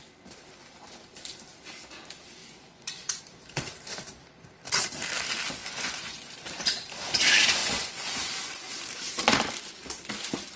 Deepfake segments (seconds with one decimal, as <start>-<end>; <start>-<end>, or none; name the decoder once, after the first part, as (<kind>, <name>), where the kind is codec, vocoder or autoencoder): 2.4-3.2 (vocoder, Vocos); 5.6-6.3; 7.6-8.8